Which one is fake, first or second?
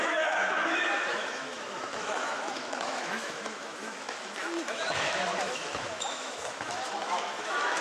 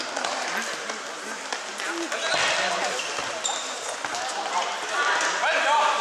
first